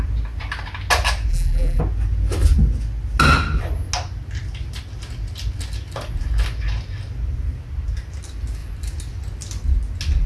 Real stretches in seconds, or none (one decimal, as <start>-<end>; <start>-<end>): 0.0-1.3; 1.8-10.3